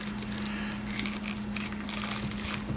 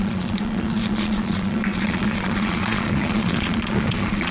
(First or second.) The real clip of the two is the first